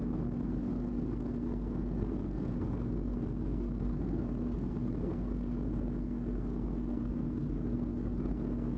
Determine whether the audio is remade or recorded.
remade